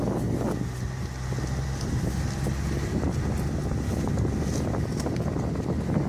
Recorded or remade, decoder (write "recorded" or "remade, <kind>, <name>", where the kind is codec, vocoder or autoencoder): recorded